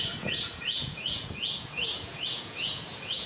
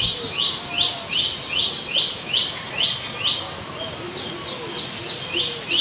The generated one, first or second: first